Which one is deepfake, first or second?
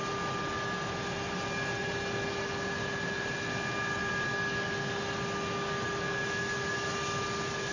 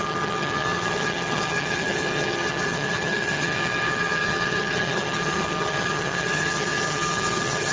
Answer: second